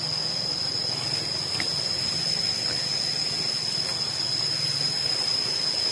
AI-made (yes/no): no